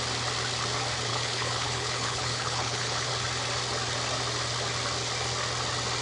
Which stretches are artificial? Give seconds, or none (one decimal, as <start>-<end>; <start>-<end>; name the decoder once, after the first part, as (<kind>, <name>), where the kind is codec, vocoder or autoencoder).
1.1-3.1 (codec, HILCodec)